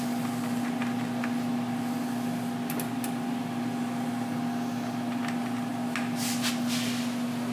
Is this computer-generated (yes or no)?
no